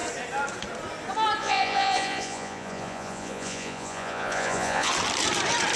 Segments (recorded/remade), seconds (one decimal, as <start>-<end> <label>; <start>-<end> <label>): 0.0-1.4 recorded; 1.4-4.9 remade; 4.9-5.8 recorded